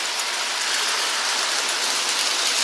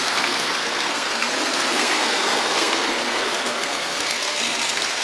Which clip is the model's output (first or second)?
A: second